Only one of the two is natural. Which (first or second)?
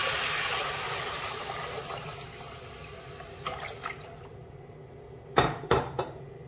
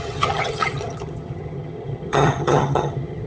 first